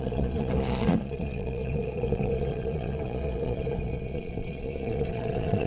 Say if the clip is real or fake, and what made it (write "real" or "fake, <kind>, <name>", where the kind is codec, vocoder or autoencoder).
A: fake, vocoder, Vocos